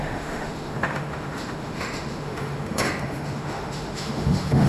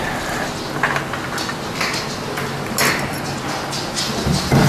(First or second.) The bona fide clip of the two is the second